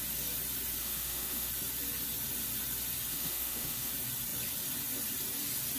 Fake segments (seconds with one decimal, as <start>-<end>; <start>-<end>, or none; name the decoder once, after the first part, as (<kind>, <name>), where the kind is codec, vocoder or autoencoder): 0.8-1.5 (autoencoder, DAC-VAE); 3.1-3.9